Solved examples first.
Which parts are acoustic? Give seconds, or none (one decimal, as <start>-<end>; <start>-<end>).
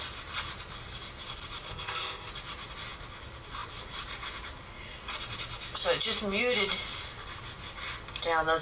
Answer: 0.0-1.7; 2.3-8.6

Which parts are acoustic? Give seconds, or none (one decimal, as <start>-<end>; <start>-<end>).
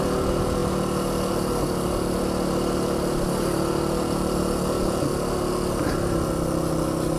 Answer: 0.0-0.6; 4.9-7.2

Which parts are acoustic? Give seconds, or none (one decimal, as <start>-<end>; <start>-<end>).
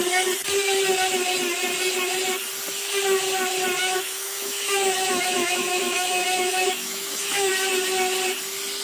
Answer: 0.0-3.8; 7.5-8.8